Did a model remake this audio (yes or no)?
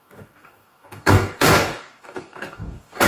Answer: yes